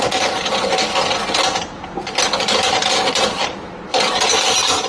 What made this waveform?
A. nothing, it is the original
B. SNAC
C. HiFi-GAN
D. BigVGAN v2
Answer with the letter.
A